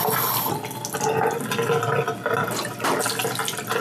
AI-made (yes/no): no